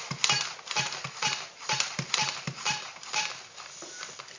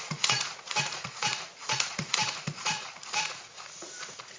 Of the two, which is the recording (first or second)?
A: first